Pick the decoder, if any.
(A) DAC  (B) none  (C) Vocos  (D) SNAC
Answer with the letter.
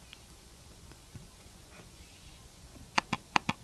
C